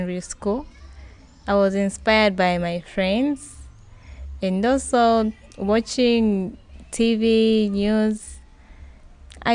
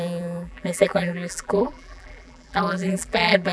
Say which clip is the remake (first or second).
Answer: second